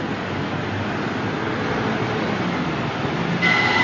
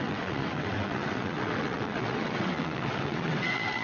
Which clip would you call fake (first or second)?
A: second